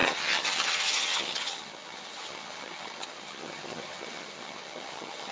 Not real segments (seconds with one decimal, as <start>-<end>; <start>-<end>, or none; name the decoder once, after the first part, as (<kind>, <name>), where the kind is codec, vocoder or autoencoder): 0.0-5.3 (vocoder, HiFi-GAN)